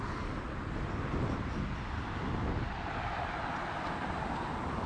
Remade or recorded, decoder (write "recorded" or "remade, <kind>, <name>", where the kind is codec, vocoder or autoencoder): recorded